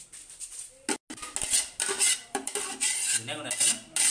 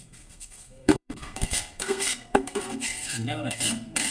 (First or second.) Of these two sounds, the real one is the first